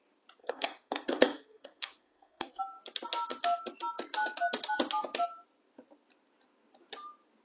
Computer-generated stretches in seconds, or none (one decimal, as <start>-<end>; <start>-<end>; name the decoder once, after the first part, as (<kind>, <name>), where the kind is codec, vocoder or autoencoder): 0.4-2.6 (codec, SNAC)